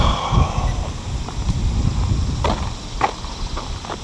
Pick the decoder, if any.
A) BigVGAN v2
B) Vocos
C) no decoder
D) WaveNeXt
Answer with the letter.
C